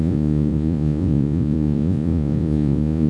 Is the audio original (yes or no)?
no